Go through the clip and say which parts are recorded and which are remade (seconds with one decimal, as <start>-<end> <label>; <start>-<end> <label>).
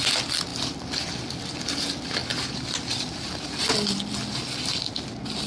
0.0-0.5 recorded; 0.5-1.3 remade; 1.3-5.5 recorded